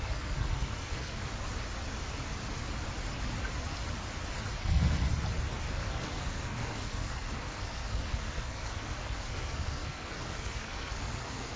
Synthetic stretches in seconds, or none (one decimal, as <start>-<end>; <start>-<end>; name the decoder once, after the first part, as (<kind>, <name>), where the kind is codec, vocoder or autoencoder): 0.0-1.3 (codec, SNAC); 4.6-5.1; 5.7-11.6